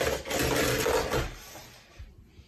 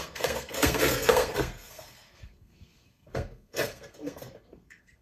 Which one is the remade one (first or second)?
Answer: second